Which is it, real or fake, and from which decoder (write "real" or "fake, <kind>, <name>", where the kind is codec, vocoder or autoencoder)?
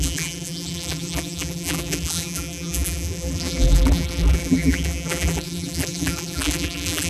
fake, vocoder, BigVGAN v2